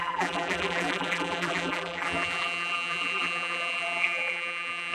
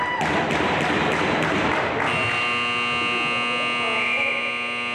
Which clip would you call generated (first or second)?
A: first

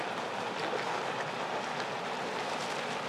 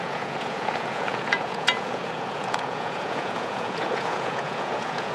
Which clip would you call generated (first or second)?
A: second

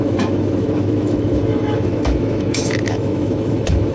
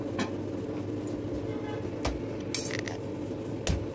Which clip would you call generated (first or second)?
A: first